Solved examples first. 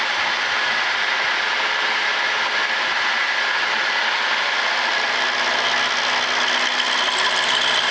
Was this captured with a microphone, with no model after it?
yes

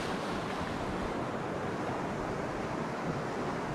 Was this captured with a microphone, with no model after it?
yes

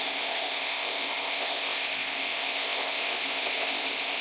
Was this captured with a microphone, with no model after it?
no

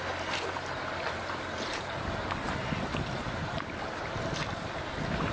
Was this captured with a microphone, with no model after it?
yes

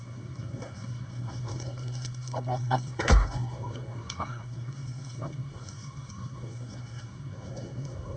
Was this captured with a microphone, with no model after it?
no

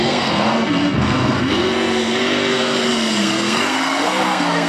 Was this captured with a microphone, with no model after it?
no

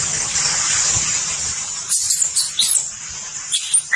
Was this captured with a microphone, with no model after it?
yes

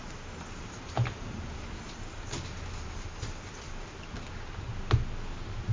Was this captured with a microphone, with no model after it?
yes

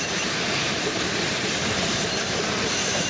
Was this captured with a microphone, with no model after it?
no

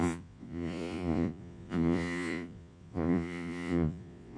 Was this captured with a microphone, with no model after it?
no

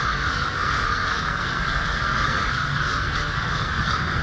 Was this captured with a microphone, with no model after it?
no